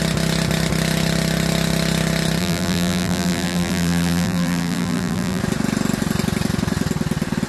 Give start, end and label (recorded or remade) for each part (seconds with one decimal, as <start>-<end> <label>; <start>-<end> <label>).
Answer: 0.0-2.4 recorded; 2.4-5.4 remade; 5.4-7.5 recorded